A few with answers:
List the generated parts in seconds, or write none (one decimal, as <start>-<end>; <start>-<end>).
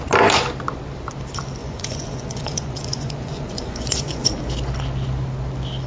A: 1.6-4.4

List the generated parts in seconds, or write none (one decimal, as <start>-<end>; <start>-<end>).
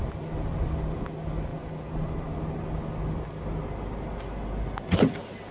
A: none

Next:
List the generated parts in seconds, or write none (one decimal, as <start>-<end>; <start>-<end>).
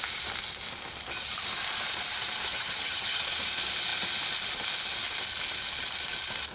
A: 2.5-3.2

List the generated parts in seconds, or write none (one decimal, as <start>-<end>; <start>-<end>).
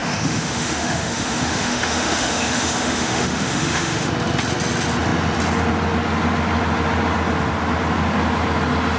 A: 0.0-4.1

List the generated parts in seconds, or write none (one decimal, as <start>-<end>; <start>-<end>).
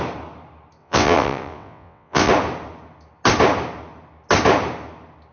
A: 0.8-2.3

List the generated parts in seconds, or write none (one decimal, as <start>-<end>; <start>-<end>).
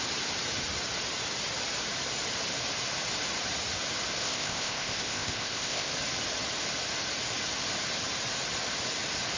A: 4.2-5.9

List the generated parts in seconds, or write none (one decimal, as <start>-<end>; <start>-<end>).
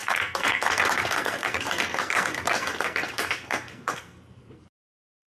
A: 0.0-5.3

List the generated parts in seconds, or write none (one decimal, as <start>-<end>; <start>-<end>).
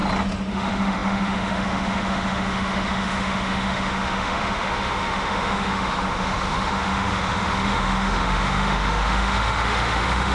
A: 0.5-10.3